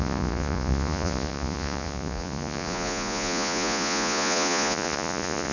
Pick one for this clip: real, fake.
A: fake